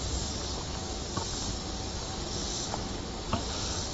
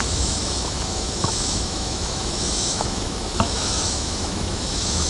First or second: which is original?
first